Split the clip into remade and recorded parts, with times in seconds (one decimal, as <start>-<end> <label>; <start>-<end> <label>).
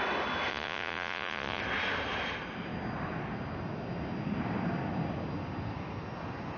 0.0-0.5 recorded; 0.5-1.6 remade; 1.6-6.6 recorded